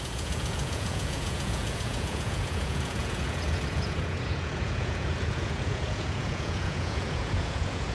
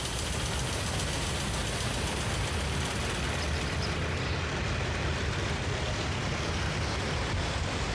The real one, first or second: second